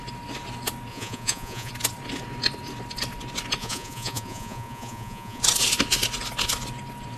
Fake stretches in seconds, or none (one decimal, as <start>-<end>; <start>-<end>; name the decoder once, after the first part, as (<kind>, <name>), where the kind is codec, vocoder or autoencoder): 0.9-1.7 (vocoder, Vocos); 3.6-5.4